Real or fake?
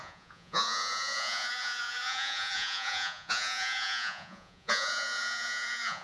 fake